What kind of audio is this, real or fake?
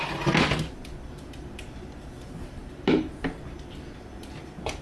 real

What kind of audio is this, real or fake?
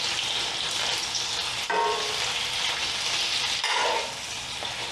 real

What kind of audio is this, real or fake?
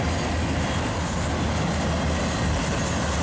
real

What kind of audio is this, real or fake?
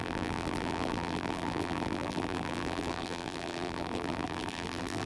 fake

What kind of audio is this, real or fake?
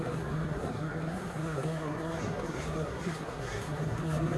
fake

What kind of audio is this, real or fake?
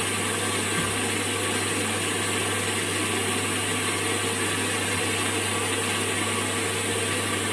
real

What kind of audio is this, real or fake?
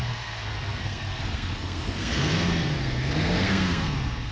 fake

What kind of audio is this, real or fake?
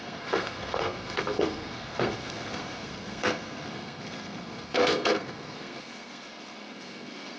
fake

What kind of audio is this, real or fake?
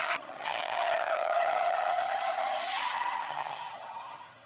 fake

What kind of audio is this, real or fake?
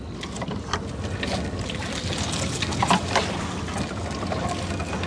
real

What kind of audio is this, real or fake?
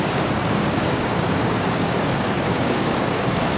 fake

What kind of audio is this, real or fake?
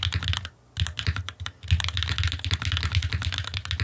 real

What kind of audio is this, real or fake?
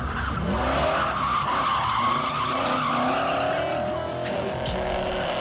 real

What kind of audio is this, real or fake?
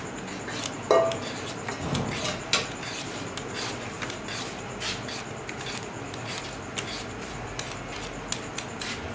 real